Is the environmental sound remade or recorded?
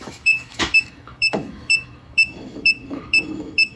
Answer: remade